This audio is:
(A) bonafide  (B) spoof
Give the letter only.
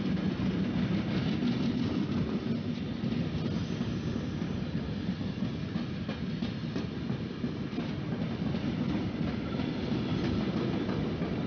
A